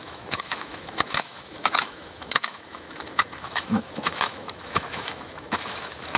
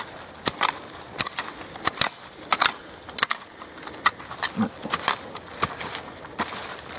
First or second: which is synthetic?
first